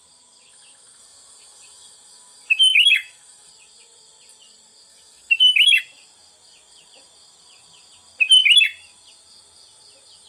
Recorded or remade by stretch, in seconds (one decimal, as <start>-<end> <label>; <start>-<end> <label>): 0.0-0.5 recorded; 0.5-3.5 remade; 3.5-4.9 recorded; 4.9-5.8 remade; 5.8-10.3 recorded

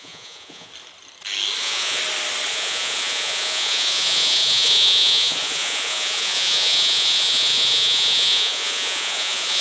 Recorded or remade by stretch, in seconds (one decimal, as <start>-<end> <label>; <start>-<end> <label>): 0.0-0.7 remade; 0.7-1.6 recorded; 1.6-2.0 remade; 2.0-2.5 recorded; 2.5-9.6 remade

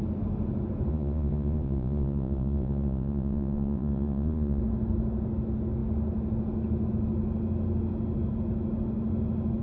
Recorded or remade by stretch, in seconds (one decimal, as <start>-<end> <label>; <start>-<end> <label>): 0.0-0.9 recorded; 0.9-4.6 remade; 4.6-9.6 recorded

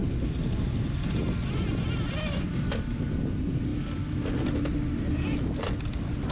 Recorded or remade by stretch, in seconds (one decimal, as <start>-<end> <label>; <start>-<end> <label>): 0.0-6.3 recorded